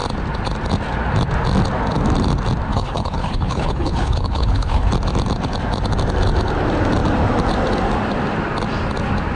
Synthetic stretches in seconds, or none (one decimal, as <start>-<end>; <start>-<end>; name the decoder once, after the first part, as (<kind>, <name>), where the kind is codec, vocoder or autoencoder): 2.7-4.9 (codec, HILCodec)